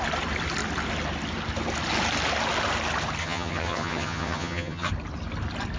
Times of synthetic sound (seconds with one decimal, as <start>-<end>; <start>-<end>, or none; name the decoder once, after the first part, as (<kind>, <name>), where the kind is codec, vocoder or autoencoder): 3.2-4.9 (vocoder, HiFi-GAN)